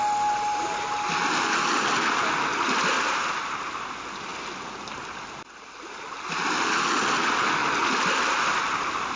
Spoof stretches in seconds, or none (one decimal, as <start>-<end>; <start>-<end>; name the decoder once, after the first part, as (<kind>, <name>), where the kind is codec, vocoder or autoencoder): none